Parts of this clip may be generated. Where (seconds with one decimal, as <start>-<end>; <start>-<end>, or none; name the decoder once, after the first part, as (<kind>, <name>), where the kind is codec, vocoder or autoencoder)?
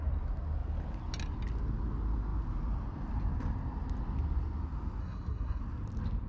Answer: 5.0-5.6 (codec, SNAC)